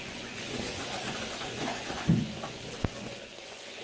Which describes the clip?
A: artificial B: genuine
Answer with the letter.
A